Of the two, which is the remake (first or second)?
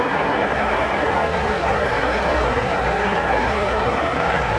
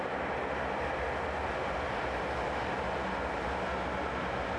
first